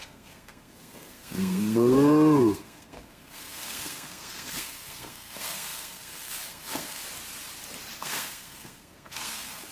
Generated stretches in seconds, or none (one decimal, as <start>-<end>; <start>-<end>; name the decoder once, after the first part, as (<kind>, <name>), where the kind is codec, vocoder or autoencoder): 0.0-7.0 (codec, SNAC); 8.0-9.7